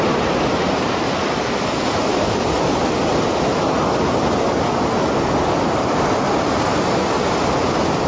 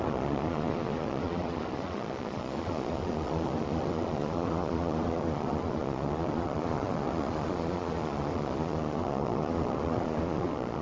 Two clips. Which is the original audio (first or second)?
first